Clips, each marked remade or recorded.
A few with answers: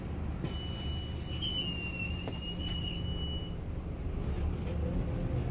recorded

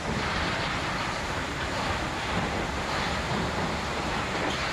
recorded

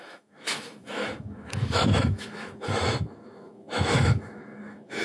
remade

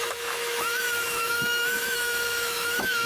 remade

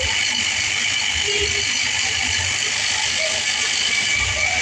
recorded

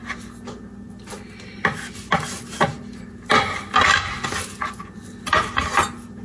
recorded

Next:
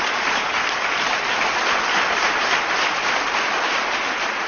recorded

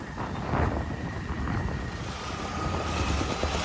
recorded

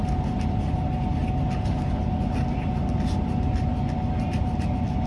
recorded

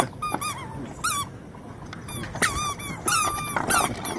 recorded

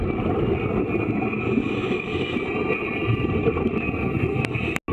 recorded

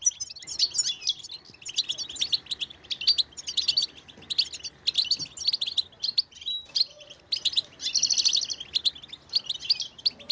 recorded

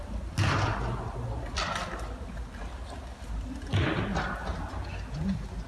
recorded